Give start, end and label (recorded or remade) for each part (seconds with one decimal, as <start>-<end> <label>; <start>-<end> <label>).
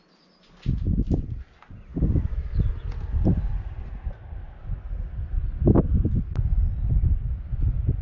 0.0-8.0 recorded